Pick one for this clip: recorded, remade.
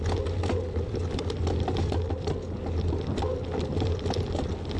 recorded